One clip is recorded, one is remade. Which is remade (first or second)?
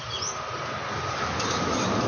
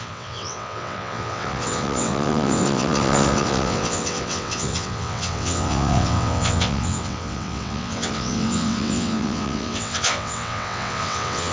second